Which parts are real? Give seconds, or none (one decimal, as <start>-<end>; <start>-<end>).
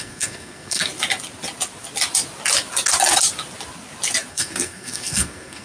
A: 0.9-4.3